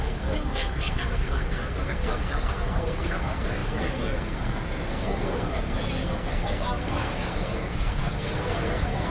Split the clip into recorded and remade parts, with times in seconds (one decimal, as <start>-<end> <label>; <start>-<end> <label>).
0.0-9.1 remade